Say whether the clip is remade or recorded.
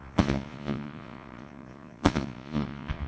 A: remade